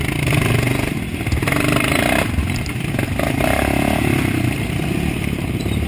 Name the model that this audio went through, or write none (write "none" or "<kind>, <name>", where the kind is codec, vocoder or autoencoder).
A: vocoder, BigVGAN v2